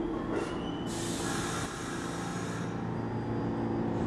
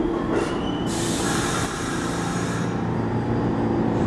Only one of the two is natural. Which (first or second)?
first